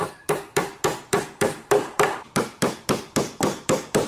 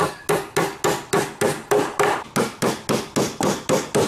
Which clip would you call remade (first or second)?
first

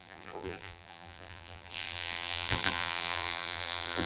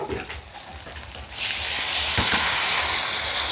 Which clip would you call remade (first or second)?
first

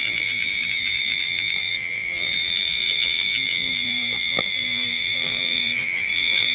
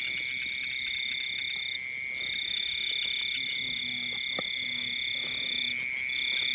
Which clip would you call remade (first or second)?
first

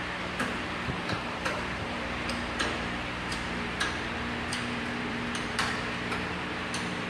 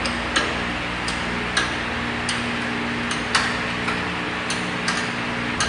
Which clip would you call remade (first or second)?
first